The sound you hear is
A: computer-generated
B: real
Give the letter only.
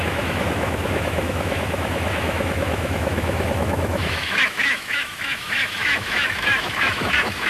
A